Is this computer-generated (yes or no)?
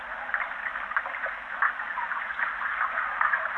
no